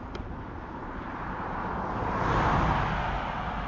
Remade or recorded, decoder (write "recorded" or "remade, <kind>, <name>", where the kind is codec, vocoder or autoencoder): recorded